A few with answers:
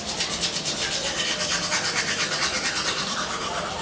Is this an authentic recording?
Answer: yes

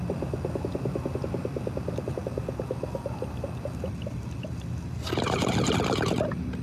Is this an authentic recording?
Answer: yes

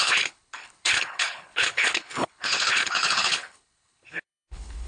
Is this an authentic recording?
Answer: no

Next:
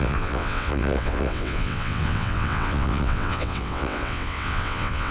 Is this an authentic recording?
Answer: no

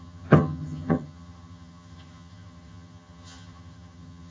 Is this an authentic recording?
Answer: no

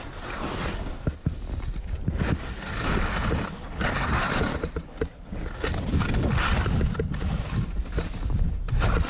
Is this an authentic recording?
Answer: yes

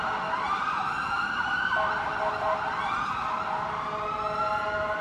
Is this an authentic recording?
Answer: yes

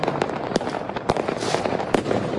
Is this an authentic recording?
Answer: no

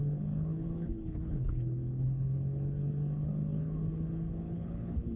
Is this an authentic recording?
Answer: no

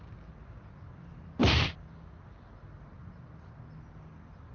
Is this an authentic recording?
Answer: yes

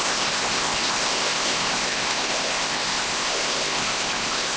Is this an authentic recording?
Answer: no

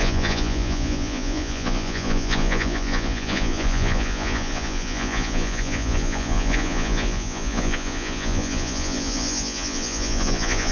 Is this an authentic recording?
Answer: no